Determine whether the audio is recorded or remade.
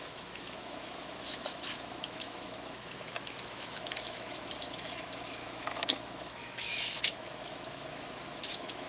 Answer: remade